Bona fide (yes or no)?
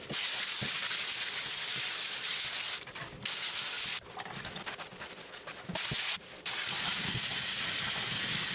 yes